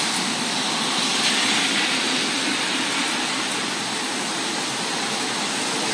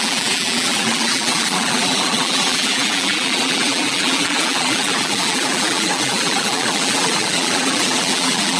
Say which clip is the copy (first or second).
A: second